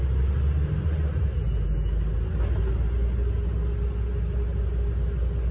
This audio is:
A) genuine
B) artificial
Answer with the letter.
A